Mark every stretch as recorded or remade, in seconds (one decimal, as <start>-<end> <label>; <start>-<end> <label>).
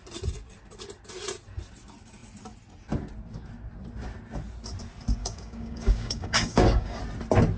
0.0-5.2 recorded; 5.2-7.0 remade; 7.0-7.6 recorded